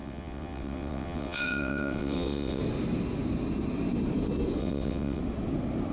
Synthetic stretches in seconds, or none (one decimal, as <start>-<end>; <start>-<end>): 0.0-2.6; 4.6-5.2